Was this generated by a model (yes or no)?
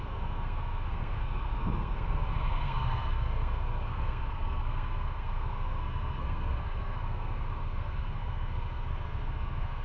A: yes